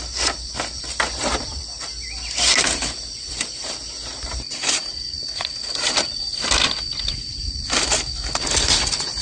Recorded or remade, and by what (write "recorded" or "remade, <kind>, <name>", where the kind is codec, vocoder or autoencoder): recorded